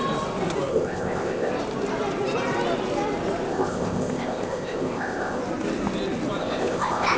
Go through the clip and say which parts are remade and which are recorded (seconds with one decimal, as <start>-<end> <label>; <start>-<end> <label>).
0.0-0.7 recorded; 0.7-1.5 remade; 1.5-3.5 recorded; 3.5-5.4 remade; 5.4-6.4 recorded; 6.4-7.2 remade